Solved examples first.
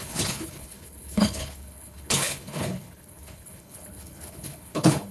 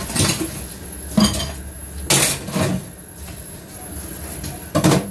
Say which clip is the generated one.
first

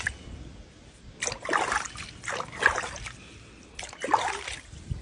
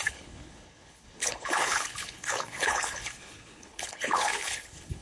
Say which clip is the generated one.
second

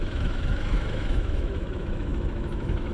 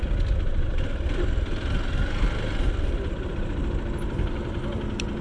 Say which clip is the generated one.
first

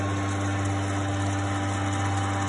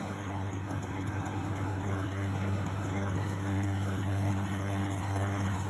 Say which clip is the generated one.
second